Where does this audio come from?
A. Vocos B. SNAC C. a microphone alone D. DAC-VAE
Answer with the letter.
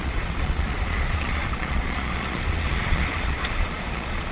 A